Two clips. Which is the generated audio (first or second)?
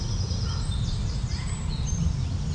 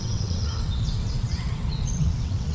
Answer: second